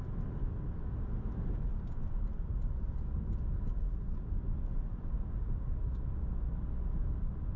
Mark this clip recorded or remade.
recorded